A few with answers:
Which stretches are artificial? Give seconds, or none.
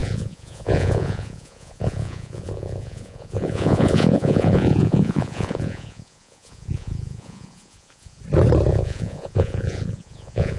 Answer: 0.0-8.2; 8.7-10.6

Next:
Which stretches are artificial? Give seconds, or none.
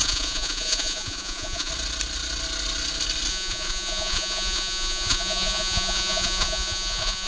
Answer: 0.0-1.7; 3.3-7.3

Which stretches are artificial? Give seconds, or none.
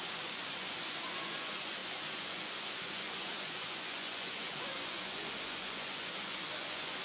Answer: 0.0-7.0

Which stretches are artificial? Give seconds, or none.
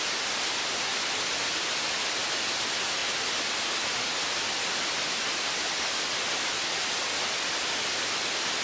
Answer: none